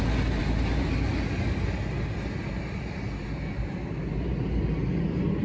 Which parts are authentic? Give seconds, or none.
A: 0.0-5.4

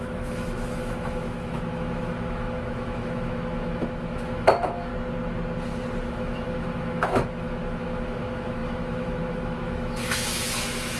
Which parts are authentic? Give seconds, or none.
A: 4.9-6.1

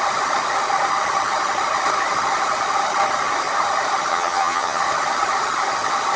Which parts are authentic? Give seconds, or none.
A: 0.0-4.1; 4.8-6.2